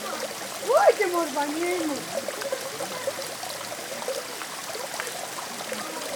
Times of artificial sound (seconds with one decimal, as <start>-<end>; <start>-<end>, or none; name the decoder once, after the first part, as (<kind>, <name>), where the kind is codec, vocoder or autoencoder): none